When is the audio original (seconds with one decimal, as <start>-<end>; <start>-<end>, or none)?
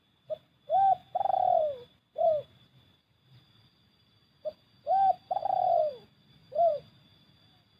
0.0-5.4; 5.9-6.4; 6.9-7.8